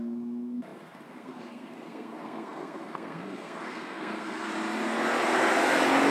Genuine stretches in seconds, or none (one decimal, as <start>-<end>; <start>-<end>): 4.5-6.1